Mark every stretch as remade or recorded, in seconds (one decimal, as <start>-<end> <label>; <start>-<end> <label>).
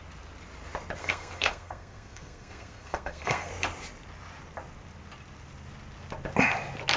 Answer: 0.0-1.0 recorded; 1.0-3.5 remade; 3.5-7.0 recorded